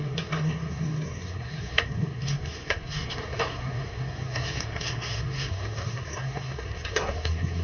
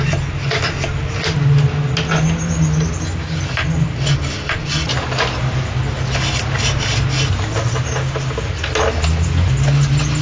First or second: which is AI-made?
first